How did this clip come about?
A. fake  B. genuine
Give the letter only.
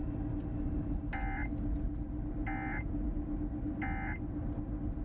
B